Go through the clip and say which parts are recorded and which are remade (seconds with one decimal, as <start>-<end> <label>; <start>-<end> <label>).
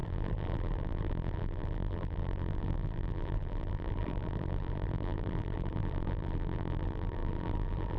0.0-8.0 remade